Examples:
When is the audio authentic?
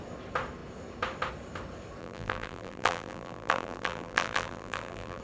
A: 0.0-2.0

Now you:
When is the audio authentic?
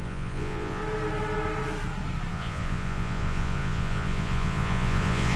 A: 0.8-2.3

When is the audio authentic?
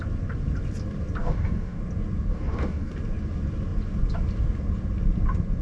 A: 0.0-1.2; 1.8-2.3; 2.9-5.6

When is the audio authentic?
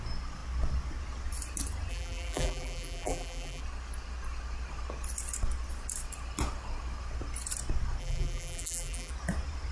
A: 0.0-1.9; 3.6-8.0; 9.1-9.7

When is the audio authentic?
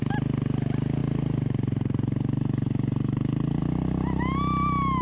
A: 0.0-1.0; 3.6-5.0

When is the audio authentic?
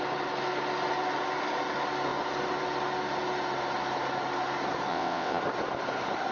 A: 0.0-4.9; 5.4-6.3